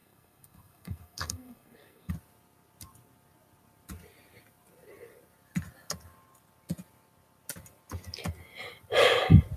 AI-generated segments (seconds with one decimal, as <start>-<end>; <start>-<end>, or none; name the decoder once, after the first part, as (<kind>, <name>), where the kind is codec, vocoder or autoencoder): 0.0-2.1 (codec, SNAC)